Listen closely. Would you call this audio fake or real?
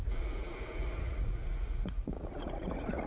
fake